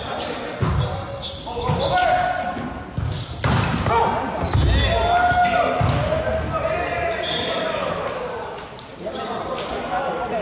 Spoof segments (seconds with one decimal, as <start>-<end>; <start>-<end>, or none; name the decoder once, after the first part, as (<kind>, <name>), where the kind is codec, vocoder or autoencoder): 8.9-9.9 (vocoder, BigVGAN v2)